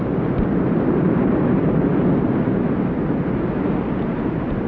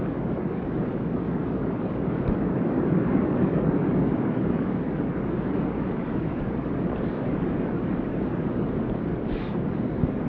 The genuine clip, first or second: first